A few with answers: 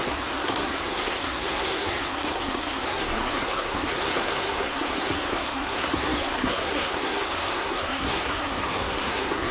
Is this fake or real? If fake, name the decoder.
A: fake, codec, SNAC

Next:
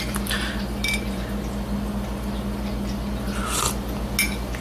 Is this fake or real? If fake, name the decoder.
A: real